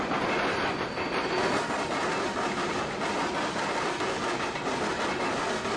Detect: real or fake real